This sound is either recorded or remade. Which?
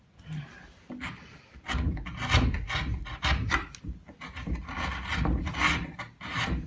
recorded